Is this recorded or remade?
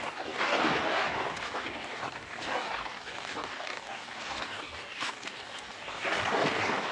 remade